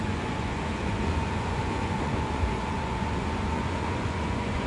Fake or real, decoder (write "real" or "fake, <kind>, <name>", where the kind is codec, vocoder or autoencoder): fake, vocoder, Vocos